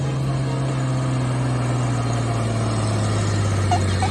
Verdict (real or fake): real